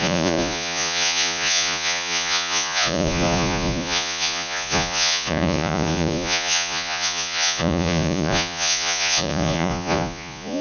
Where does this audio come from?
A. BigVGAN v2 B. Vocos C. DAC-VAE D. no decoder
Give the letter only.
B